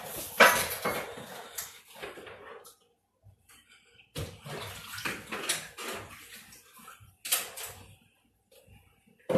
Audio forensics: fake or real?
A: real